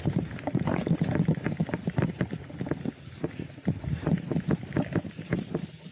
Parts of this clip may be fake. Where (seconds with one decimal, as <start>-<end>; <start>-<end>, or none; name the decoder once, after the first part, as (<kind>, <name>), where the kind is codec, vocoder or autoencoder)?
none